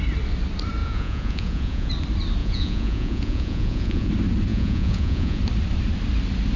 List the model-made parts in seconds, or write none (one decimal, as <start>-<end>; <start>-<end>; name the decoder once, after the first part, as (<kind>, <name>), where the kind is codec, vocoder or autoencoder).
0.8-1.9 (vocoder, Vocos); 2.4-4.1; 4.5-5.4